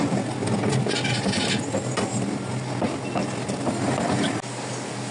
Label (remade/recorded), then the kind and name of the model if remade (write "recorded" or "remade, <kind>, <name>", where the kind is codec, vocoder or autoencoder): recorded